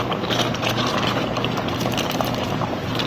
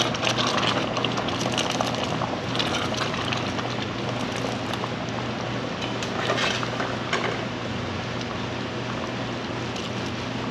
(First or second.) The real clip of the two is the second